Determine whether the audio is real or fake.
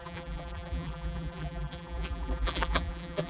fake